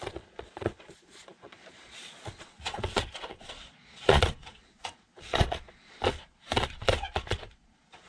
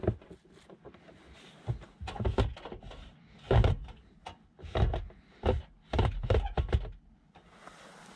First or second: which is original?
second